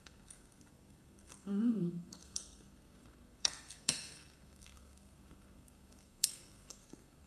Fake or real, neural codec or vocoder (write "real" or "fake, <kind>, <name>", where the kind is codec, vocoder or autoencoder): fake, codec, SNAC